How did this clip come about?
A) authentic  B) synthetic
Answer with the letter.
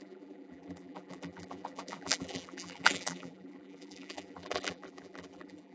B